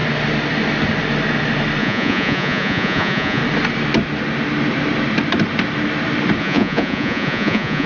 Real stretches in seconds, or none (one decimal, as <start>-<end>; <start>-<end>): 0.0-1.8; 3.4-6.4